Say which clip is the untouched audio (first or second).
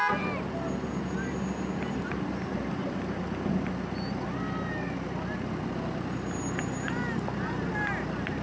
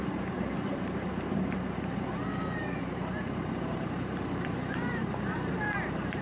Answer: first